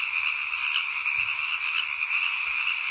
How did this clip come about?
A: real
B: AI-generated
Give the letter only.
A